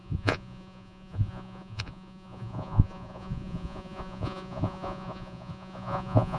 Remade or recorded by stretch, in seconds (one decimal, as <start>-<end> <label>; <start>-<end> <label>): 0.0-6.4 remade